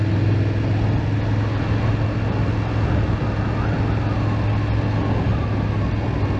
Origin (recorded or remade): recorded